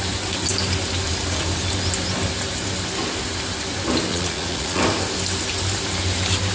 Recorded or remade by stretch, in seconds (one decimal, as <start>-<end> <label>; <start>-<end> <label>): 0.0-4.1 recorded; 4.1-4.8 remade; 4.8-6.5 recorded